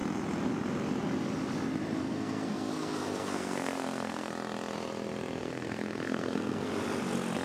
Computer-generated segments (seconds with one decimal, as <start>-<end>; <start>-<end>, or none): 2.0-4.3; 5.4-6.7